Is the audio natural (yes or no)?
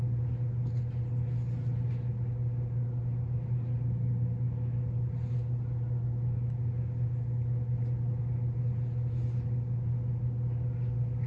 yes